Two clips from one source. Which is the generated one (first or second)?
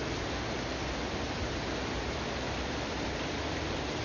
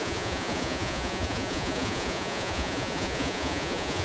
second